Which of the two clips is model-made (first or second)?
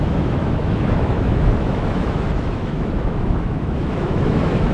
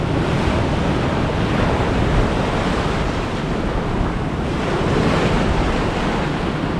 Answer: first